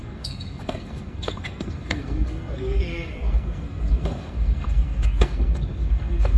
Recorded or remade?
remade